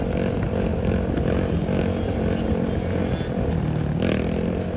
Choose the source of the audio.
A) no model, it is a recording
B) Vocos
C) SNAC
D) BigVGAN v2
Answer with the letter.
A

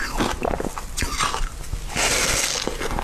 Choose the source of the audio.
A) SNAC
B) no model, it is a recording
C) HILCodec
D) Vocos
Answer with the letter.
B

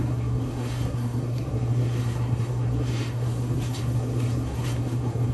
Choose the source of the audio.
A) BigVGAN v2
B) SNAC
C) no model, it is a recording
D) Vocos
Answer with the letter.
B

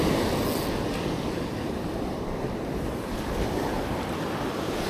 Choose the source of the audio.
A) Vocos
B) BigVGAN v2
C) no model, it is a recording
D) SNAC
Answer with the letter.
C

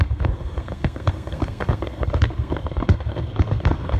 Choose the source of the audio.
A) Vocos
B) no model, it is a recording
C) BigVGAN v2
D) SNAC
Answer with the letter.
D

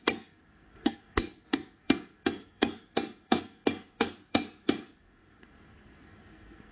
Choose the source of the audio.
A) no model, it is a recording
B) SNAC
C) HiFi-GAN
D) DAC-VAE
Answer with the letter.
B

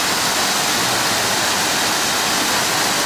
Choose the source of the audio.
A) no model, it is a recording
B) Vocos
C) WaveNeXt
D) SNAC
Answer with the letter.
A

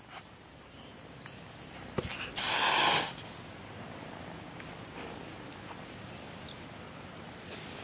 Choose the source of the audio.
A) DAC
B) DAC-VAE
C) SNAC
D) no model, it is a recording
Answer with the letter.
D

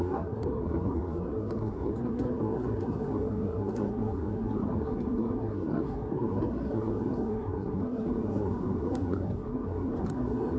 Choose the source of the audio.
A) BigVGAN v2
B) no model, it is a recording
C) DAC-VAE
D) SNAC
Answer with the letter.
D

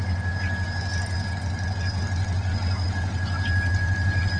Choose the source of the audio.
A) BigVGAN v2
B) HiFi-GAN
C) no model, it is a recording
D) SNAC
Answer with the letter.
C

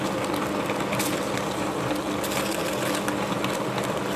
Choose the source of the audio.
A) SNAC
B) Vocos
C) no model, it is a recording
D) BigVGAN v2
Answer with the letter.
C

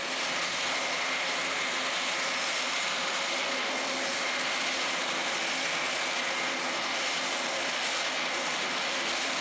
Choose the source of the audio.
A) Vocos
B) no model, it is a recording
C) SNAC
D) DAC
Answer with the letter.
B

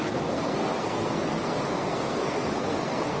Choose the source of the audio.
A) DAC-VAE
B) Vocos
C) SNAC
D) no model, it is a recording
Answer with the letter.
C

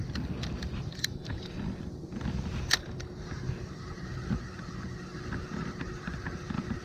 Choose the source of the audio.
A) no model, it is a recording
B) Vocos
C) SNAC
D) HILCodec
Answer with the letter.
A